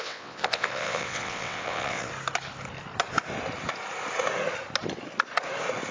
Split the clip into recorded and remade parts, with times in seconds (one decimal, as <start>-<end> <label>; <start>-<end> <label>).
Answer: 0.0-2.1 remade; 2.1-5.9 recorded